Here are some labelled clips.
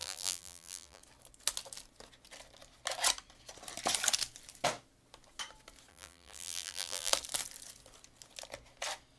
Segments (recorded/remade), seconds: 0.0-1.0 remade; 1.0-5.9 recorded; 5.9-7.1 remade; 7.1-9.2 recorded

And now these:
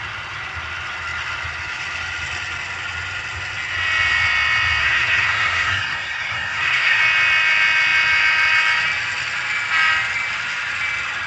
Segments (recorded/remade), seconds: 0.0-4.8 recorded; 4.8-7.0 remade; 7.0-11.3 recorded